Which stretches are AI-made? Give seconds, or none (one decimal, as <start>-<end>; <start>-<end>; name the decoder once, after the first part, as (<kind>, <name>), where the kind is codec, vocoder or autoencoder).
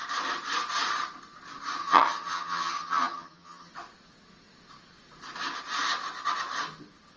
1.8-3.7 (vocoder, HiFi-GAN)